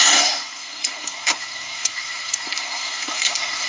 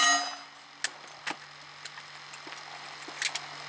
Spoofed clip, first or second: first